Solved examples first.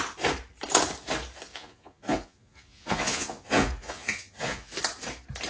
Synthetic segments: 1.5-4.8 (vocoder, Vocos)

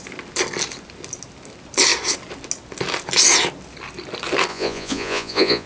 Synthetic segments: 4.5-5.7 (vocoder, Vocos)

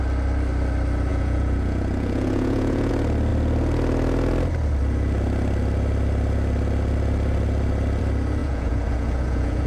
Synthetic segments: 1.1-2.9 (vocoder, Vocos); 8.4-9.7

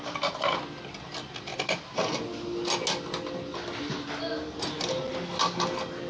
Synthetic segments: none

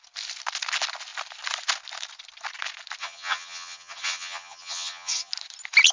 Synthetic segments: 3.0-5.3 (vocoder, HiFi-GAN)

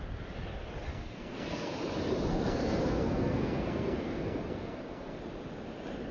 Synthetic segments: 0.9-1.7 (codec, SNAC); 2.3-5.2